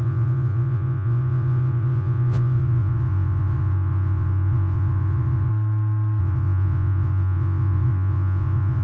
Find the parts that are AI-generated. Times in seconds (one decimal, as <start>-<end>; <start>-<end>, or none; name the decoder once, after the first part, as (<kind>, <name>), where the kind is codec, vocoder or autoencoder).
0.0-5.5 (vocoder, Vocos); 6.2-8.8